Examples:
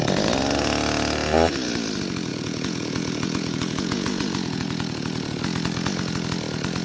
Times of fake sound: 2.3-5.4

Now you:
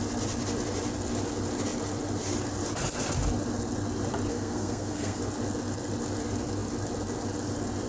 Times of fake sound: 4.3-5.2

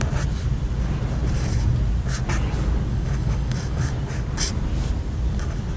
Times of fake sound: 2.9-3.9

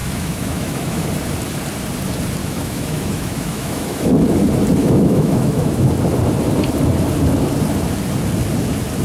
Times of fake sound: 0.0-1.1; 2.4-4.1; 4.8-5.9

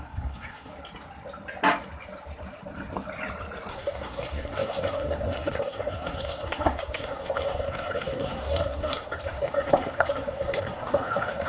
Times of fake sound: 0.0-0.7; 3.7-11.5